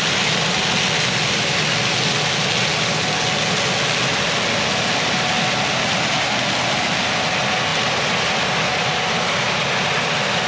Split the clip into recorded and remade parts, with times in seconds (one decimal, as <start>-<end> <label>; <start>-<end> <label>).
0.0-10.5 recorded

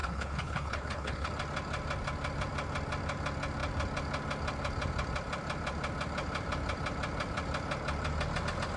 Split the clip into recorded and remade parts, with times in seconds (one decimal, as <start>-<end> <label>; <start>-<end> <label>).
0.0-1.3 remade; 1.3-8.8 recorded